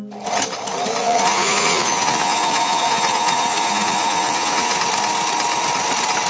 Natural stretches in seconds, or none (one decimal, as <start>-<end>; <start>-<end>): 0.0-1.0; 4.8-6.3